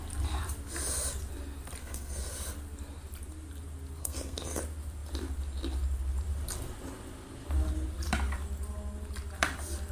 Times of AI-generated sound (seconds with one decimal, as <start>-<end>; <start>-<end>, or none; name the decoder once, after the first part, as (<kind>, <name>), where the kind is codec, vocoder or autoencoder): 1.8-2.3 (codec, SNAC); 4.0-4.6